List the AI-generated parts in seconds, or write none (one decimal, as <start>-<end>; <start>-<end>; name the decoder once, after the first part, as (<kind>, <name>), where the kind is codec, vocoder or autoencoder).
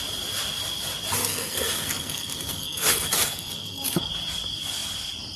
1.2-4.1 (codec, SNAC)